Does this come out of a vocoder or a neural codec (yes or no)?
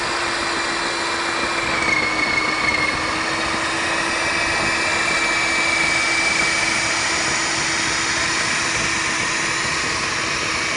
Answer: no